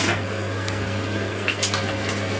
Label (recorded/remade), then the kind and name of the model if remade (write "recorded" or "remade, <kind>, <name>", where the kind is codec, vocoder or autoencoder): remade, codec, SNAC